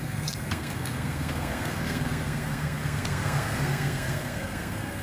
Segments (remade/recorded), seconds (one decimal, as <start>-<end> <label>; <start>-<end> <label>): 0.0-5.0 remade